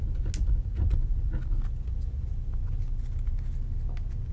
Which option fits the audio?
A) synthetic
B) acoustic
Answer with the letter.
B